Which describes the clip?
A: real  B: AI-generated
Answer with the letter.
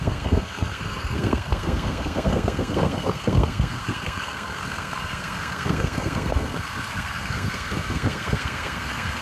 B